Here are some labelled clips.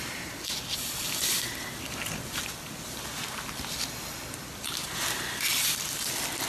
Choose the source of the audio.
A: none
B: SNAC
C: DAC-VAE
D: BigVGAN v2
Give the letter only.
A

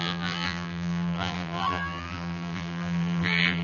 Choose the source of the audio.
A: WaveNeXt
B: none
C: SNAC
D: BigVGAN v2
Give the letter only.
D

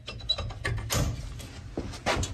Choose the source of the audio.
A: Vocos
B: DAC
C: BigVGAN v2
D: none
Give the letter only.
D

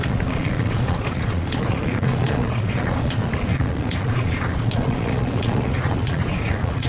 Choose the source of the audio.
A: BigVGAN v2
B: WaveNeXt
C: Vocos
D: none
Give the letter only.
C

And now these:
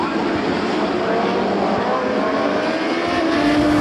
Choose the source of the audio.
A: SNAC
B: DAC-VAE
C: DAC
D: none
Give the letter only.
D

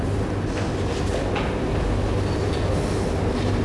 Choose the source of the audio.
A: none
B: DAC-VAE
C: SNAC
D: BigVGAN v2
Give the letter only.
A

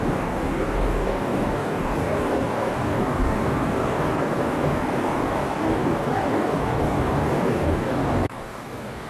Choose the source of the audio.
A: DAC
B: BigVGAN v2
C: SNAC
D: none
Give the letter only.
A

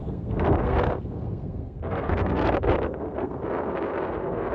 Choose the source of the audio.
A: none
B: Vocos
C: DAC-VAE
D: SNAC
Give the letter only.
D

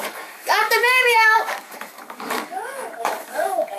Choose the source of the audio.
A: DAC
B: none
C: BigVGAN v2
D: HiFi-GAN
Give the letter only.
A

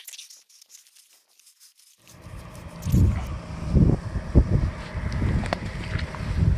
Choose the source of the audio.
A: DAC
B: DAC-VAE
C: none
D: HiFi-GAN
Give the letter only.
C